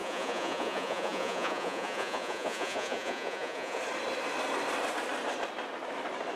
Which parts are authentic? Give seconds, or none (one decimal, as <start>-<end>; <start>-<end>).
3.8-6.4